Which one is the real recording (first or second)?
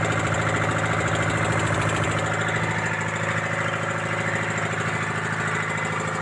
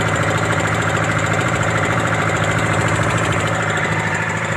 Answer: first